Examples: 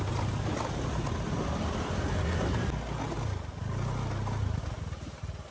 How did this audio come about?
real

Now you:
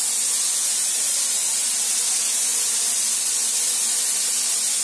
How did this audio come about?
real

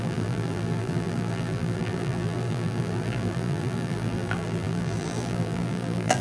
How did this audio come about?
fake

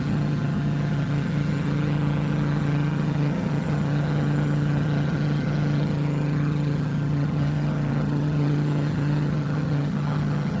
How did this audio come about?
fake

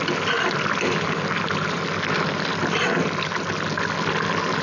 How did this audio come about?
real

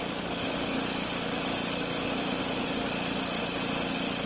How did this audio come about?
real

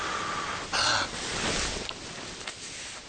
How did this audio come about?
real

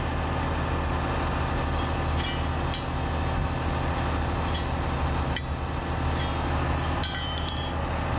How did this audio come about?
real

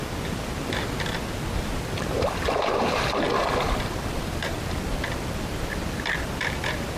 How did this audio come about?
real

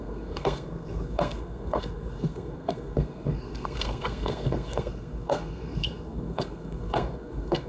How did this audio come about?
fake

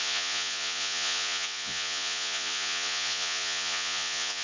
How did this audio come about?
fake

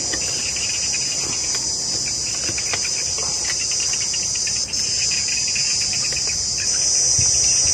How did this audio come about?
real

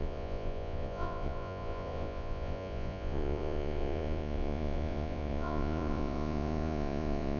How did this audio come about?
fake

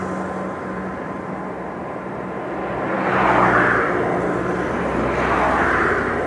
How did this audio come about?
real